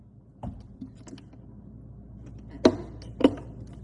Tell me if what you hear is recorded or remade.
recorded